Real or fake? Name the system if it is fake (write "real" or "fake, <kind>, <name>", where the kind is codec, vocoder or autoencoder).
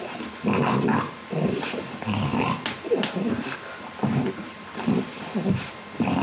real